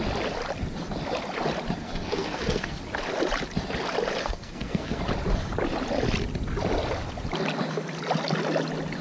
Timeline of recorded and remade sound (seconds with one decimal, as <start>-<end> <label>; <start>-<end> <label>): 0.0-1.8 recorded; 1.8-2.8 remade; 2.8-4.2 recorded; 4.2-5.0 remade; 5.0-9.0 recorded